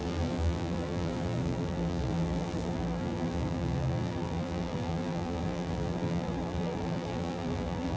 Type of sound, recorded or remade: remade